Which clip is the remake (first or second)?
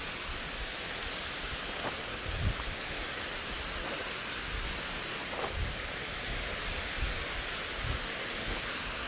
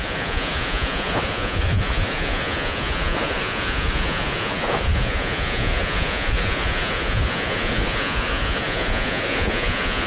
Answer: second